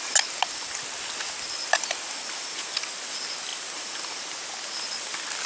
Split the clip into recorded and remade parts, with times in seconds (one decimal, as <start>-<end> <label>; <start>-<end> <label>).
0.0-5.5 recorded